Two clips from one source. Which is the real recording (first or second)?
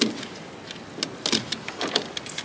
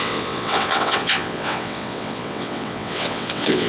first